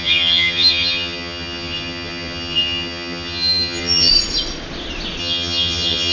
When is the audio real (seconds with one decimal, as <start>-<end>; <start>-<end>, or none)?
4.1-5.2